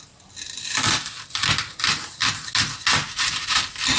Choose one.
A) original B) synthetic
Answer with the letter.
A